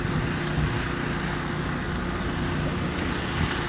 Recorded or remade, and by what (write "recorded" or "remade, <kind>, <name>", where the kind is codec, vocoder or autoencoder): recorded